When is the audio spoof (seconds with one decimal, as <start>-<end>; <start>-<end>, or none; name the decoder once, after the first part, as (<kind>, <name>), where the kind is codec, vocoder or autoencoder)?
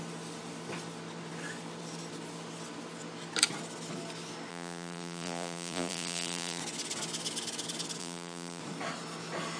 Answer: 4.5-6.6 (vocoder, BigVGAN v2); 8.0-8.6